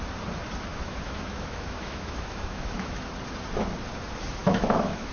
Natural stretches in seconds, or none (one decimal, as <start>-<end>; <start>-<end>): 0.0-0.7; 3.0-4.4